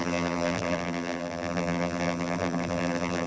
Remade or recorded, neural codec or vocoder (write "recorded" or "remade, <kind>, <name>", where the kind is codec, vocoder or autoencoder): remade, vocoder, BigVGAN v2